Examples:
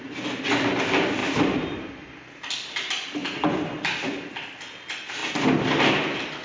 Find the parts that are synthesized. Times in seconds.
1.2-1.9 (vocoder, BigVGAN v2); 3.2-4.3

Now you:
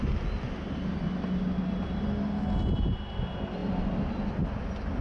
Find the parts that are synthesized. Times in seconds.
none

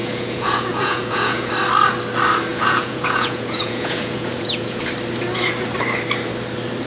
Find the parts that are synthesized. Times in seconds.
0.0-1.5 (vocoder, Vocos); 2.5-4.8

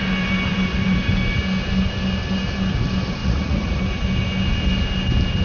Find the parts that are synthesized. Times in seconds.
3.2-3.8 (vocoder, Vocos)